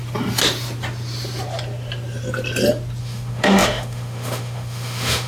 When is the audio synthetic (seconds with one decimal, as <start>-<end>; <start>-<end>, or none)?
3.0-5.3